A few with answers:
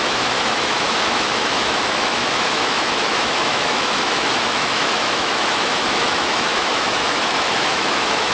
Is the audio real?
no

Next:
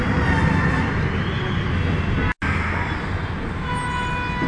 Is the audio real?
yes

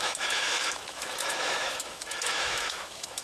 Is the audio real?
no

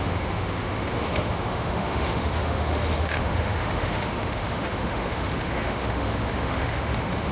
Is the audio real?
no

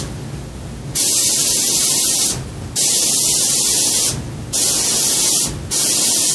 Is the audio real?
yes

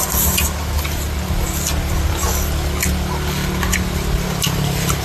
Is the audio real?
yes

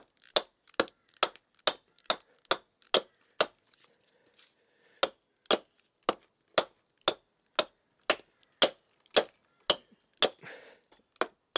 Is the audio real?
yes